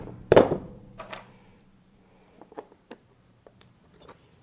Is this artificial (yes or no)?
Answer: yes